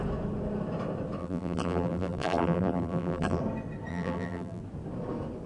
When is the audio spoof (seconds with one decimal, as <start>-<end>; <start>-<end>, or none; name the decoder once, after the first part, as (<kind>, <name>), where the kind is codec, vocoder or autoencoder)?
1.2-3.4 (vocoder, BigVGAN v2); 3.9-4.6